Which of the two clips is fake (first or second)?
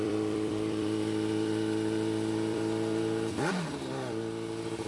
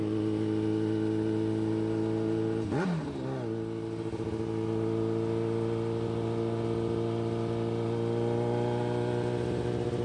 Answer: first